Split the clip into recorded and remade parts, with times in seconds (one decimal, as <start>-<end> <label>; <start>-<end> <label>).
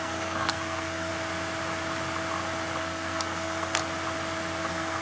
0.0-1.1 remade; 1.1-2.8 recorded; 2.8-3.8 remade; 3.8-4.6 recorded; 4.6-5.0 remade